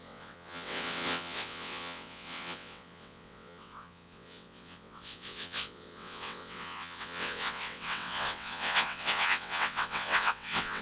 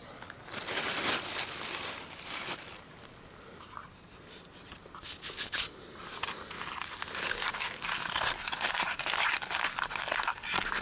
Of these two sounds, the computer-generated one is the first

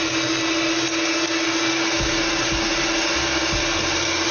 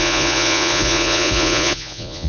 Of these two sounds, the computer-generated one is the second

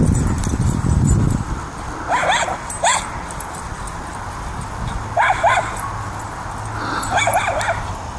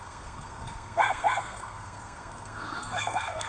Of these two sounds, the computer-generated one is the second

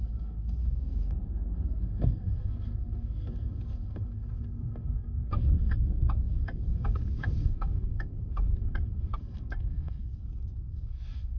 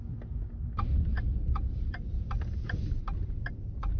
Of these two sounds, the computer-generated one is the first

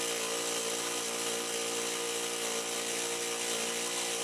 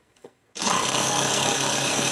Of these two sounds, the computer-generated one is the second